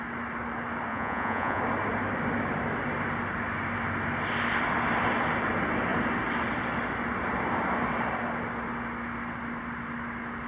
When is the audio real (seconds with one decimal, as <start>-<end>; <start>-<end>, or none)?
0.0-0.9; 1.6-10.5